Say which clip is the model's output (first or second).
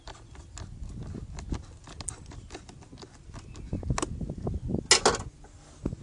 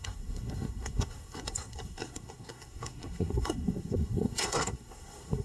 second